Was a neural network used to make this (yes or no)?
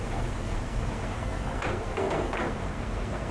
yes